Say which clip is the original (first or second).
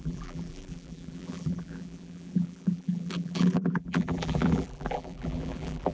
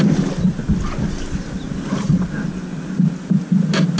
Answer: second